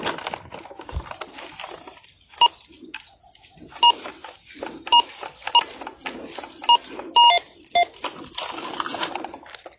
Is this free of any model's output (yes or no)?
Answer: yes